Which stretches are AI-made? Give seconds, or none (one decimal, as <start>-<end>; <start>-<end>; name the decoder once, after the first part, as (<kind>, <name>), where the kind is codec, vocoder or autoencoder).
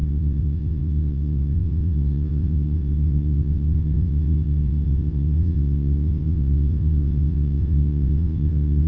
0.0-8.9 (vocoder, WaveNeXt)